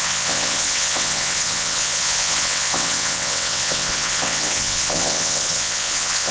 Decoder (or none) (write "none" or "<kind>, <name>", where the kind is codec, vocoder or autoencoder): vocoder, WaveNeXt